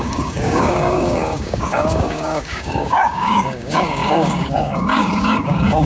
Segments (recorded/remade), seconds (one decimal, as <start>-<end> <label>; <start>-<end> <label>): 0.0-5.9 remade